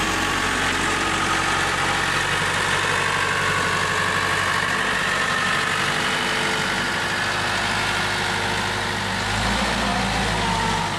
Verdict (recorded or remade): recorded